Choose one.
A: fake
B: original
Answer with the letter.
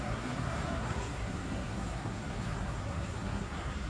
A